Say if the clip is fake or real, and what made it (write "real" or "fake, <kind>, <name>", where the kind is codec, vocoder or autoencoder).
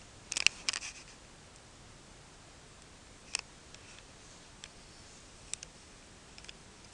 real